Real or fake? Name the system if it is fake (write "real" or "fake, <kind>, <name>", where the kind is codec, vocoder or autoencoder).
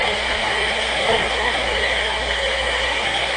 fake, codec, SNAC